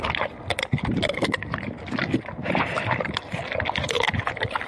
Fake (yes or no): no